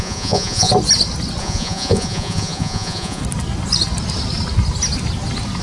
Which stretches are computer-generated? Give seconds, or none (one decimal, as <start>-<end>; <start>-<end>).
0.0-0.7; 1.4-3.2